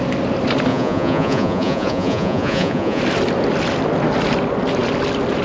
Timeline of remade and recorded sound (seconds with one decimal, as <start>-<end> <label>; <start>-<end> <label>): 0.0-0.7 recorded; 0.7-3.0 remade; 3.0-5.4 recorded